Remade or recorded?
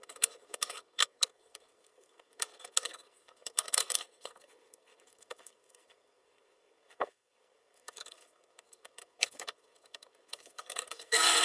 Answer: remade